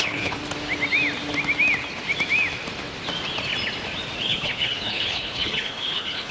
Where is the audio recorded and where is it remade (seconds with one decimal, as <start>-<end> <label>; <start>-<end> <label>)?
0.0-0.4 remade; 0.4-4.2 recorded; 4.2-6.3 remade